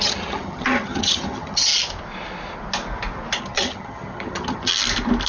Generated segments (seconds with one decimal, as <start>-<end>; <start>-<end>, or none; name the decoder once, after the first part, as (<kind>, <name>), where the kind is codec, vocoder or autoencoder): 0.0-1.7 (vocoder, HiFi-GAN); 3.4-4.7